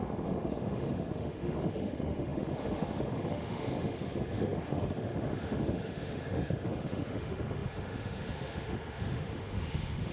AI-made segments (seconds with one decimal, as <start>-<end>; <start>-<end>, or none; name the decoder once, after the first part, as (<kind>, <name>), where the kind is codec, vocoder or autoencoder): 0.0-10.1 (autoencoder, DAC-VAE)